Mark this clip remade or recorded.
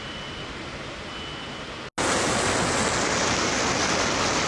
recorded